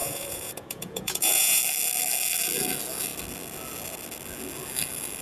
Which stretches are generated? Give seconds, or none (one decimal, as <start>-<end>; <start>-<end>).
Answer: 0.0-1.6